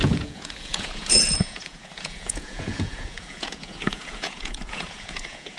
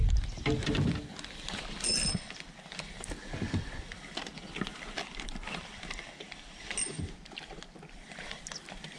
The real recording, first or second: second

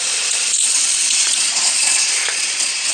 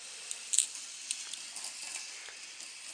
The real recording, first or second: second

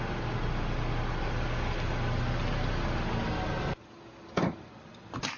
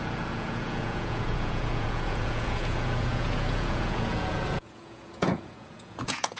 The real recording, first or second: first